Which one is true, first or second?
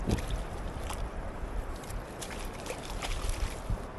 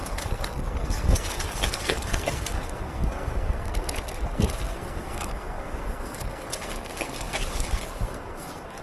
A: first